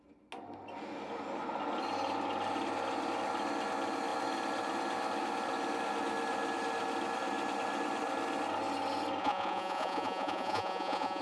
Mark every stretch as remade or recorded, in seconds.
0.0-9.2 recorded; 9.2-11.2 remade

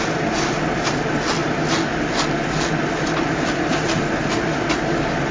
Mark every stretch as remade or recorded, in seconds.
0.0-5.3 recorded